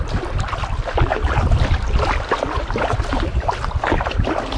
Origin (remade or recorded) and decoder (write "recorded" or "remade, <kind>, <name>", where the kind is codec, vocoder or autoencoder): remade, vocoder, BigVGAN v2